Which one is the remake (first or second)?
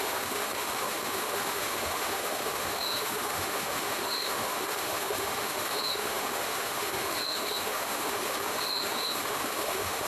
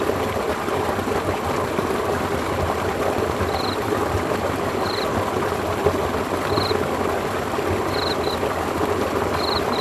first